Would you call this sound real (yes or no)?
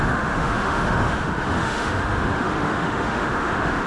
no